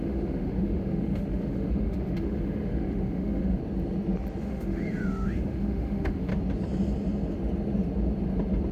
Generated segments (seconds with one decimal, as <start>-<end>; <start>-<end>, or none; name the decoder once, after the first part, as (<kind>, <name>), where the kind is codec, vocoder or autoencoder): 0.0-3.6 (autoencoder, DAC-VAE); 4.4-6.3